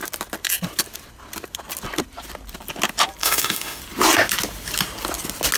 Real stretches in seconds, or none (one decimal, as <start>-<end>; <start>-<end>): 0.0-3.2; 3.8-5.6